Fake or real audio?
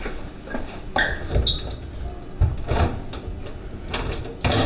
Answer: real